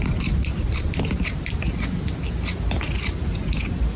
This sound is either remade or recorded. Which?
recorded